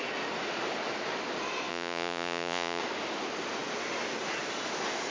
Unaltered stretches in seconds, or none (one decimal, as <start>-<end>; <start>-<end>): 0.0-1.7; 2.8-5.1